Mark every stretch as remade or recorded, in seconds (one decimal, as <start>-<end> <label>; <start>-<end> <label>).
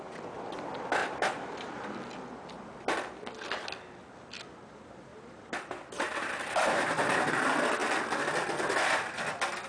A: 0.0-1.0 recorded; 1.0-1.8 remade; 1.8-5.1 recorded; 5.1-7.3 remade; 7.3-9.7 recorded